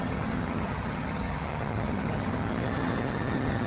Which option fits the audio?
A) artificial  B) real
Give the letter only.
A